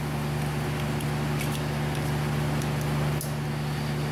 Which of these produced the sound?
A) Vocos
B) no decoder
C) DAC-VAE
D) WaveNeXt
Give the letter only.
B